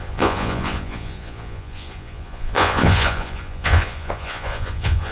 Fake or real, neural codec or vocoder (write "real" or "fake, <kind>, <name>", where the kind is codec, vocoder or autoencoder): fake, vocoder, Vocos